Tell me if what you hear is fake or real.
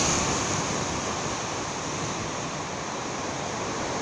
real